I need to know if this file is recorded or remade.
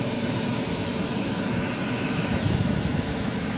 remade